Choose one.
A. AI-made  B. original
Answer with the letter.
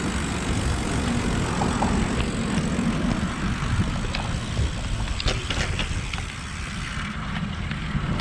B